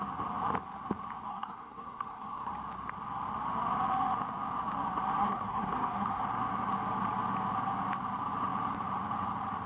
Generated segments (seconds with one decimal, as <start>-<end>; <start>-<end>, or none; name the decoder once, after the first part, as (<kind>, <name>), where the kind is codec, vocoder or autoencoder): 1.3-2.5 (codec, SNAC); 5.2-6.2